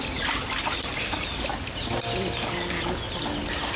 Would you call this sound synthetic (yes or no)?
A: no